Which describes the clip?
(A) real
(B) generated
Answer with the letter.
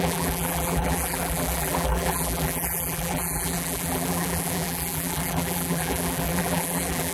B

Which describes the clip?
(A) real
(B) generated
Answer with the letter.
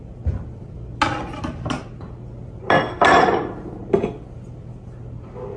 A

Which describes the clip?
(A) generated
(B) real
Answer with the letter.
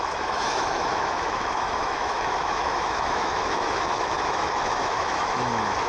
A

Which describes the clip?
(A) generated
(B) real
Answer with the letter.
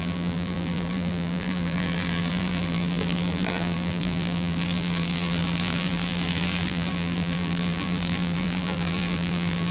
A